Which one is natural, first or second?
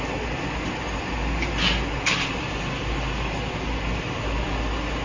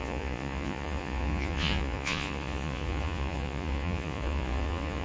first